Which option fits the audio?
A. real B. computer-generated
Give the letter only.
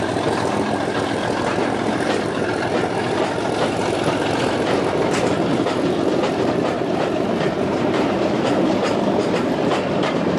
B